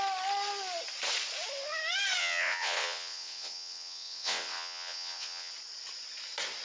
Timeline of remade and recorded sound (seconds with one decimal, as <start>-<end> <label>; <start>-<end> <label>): 0.0-2.2 recorded; 2.2-5.5 remade; 5.5-6.6 recorded